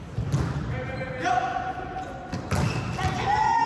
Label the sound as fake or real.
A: real